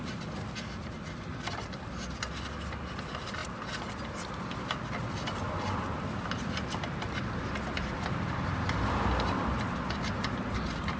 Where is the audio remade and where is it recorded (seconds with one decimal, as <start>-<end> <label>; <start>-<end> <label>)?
0.0-11.0 recorded